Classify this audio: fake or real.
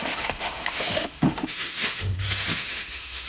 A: fake